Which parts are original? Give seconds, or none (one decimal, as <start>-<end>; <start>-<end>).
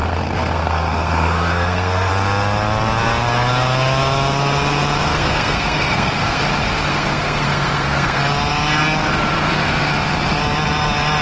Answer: 2.1-5.1; 6.4-6.9; 8.2-11.2